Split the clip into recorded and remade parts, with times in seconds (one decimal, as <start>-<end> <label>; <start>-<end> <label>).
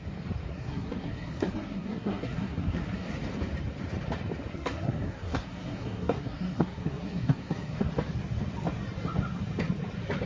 0.0-0.5 recorded; 0.5-3.1 remade; 3.1-4.5 recorded; 4.5-7.9 remade; 7.9-10.3 recorded